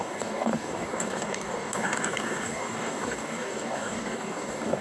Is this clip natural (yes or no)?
no